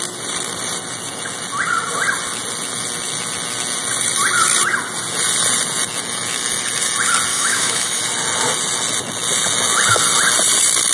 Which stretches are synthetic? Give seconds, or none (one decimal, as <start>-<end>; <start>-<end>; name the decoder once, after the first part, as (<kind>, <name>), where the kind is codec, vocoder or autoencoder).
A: 7.3-8.0 (autoencoder, DAC-VAE)